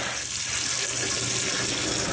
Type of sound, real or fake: real